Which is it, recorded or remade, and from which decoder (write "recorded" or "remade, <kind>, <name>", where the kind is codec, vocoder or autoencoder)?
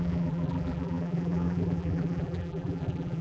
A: remade, vocoder, BigVGAN v2